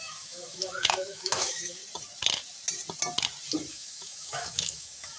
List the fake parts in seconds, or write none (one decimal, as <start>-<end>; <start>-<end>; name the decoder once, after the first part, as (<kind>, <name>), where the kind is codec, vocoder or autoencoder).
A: 0.0-1.8 (autoencoder, DAC-VAE); 3.7-5.2